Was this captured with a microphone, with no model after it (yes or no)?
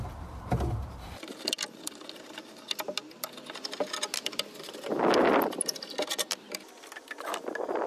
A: yes